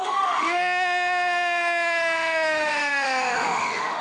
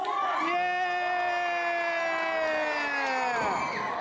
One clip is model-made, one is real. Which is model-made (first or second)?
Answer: first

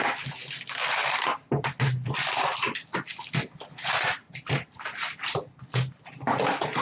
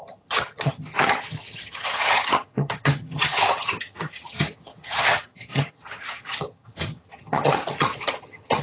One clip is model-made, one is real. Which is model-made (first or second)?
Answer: second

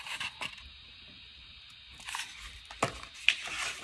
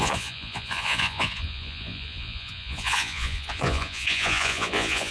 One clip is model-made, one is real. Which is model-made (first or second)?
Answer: second